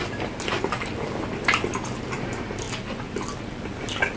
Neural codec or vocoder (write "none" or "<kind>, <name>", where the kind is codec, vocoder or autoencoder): none